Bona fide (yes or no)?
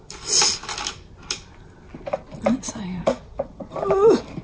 yes